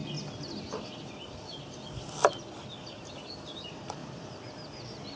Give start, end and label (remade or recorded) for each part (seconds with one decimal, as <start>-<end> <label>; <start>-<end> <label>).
0.0-3.1 recorded; 3.1-4.0 remade; 4.0-5.2 recorded